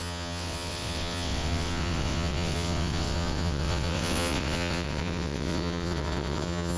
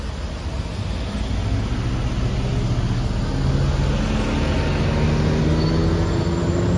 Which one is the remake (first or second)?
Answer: first